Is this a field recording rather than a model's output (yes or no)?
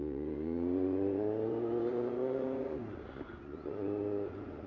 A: no